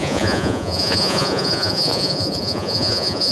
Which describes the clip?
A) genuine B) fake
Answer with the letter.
B